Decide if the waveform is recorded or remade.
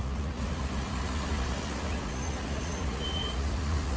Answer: remade